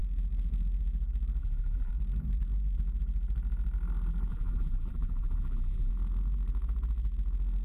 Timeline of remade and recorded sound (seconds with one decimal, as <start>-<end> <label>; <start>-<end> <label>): 0.0-1.4 recorded; 1.4-1.9 remade; 1.9-4.3 recorded; 4.3-5.9 remade; 5.9-7.6 recorded